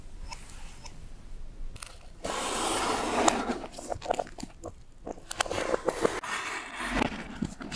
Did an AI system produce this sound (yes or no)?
no